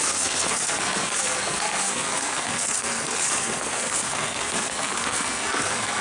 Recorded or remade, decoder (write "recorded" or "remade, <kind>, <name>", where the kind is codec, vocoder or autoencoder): remade, codec, SNAC